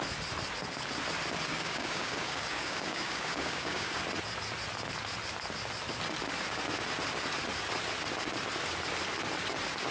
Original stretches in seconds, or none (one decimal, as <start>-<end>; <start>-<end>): 0.0-1.5; 4.0-9.9